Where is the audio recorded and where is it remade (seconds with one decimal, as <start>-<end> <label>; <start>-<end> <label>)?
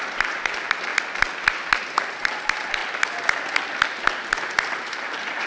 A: 0.0-0.9 remade; 0.9-2.0 recorded; 2.0-2.8 remade; 2.8-4.8 recorded; 4.8-5.5 remade